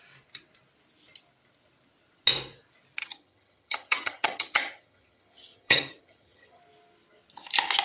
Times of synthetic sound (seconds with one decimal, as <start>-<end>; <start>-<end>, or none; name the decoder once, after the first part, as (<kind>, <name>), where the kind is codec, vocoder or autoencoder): 3.0-6.6 (vocoder, HiFi-GAN)